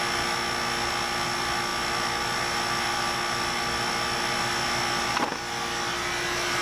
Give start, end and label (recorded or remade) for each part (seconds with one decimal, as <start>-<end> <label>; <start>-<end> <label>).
0.0-6.6 recorded